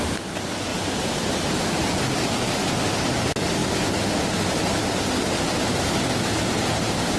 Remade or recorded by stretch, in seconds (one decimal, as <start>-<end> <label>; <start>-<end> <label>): 0.0-0.7 recorded; 0.7-2.8 remade; 2.8-7.2 recorded